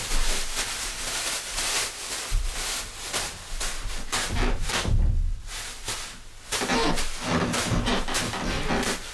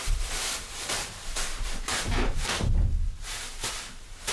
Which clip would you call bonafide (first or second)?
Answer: first